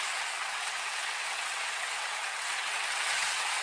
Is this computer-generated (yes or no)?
yes